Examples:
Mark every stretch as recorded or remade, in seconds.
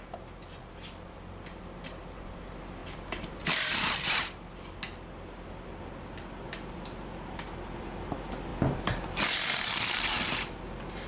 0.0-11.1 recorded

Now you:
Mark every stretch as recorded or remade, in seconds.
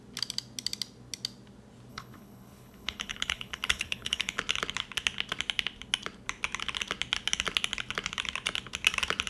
0.0-1.9 recorded; 1.9-4.4 remade; 4.4-9.3 recorded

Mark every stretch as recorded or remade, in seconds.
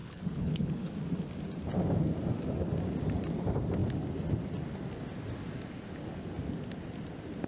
0.0-0.9 remade; 0.9-7.5 recorded